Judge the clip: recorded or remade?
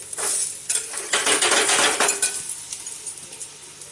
recorded